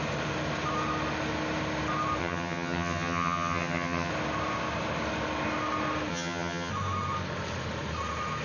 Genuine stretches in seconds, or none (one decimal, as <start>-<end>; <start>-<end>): 0.0-2.2; 4.1-6.1; 6.7-8.4